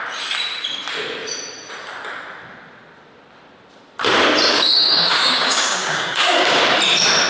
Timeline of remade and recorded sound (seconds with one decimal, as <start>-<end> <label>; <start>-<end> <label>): 0.0-4.5 recorded; 4.5-6.6 remade; 6.6-7.3 recorded